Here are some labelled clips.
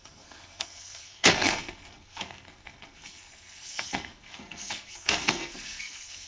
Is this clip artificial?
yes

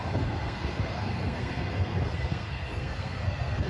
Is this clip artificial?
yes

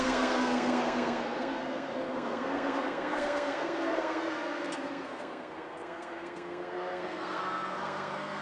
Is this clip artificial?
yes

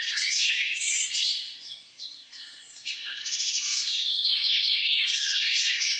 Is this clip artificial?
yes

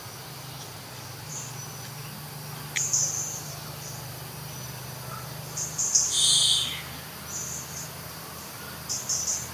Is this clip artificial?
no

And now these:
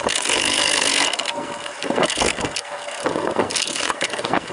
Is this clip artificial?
yes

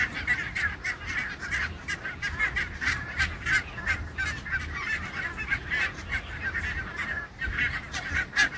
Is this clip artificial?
no